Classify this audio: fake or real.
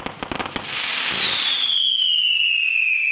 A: real